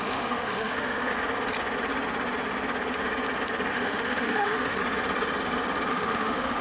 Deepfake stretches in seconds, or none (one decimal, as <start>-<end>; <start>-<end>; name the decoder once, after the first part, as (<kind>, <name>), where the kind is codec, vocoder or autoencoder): 0.0-1.1 (autoencoder, DAC-VAE); 3.7-4.8; 5.9-6.6